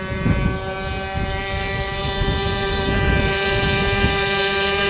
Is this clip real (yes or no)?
yes